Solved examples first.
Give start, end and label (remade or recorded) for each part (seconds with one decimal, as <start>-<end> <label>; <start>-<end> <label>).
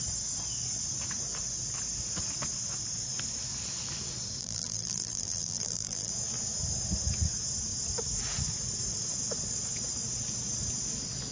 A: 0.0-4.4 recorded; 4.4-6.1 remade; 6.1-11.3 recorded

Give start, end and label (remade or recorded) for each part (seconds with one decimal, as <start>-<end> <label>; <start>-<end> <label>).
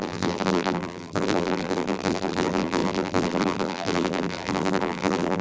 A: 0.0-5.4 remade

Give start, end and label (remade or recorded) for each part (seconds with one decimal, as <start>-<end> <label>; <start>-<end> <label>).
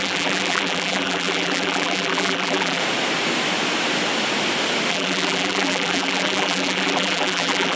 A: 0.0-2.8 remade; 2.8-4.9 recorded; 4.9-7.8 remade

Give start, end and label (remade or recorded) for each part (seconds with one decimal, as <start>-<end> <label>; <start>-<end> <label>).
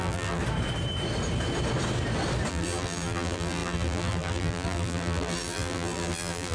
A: 0.0-0.4 remade; 0.4-2.5 recorded; 2.5-6.5 remade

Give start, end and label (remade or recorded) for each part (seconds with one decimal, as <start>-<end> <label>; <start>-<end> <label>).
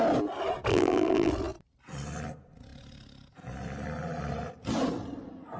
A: 0.0-0.7 recorded; 0.7-1.3 remade; 1.3-5.6 recorded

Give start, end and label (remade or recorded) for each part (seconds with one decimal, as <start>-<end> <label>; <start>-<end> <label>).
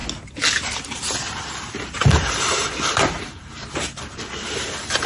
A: 0.0-0.6 recorded; 0.6-5.1 remade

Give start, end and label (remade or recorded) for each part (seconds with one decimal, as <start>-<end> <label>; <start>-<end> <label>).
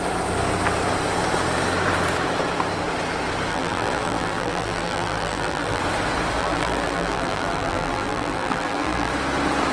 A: 0.0-3.5 recorded; 3.5-5.8 remade; 5.8-6.4 recorded; 6.4-9.1 remade; 9.1-9.7 recorded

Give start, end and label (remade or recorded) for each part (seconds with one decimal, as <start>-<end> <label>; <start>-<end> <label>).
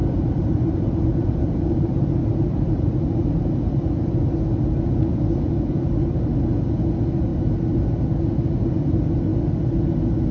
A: 0.0-3.7 remade; 3.7-10.3 recorded